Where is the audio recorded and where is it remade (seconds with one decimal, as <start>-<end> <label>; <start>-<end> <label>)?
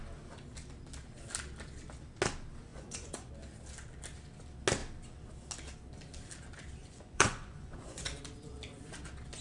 0.0-2.7 recorded; 2.7-3.3 remade; 3.3-6.8 recorded; 6.8-8.1 remade; 8.1-9.4 recorded